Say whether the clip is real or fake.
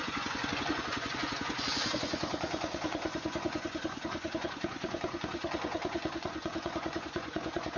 fake